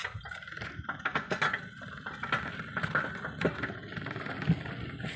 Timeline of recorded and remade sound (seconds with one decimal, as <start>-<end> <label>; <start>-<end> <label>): 0.0-5.2 recorded